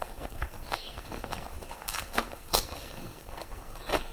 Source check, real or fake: fake